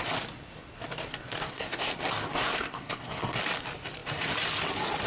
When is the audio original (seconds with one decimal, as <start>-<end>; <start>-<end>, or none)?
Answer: 0.0-1.4; 1.9-2.3; 3.4-5.1